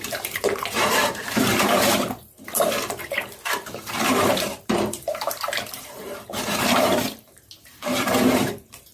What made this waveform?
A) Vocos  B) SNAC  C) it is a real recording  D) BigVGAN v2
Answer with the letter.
D